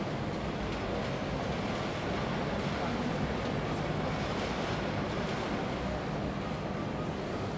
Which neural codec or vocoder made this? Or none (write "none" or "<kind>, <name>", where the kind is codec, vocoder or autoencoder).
none